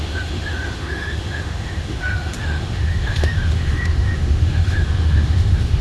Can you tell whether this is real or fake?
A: fake